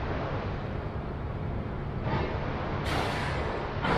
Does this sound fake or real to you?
real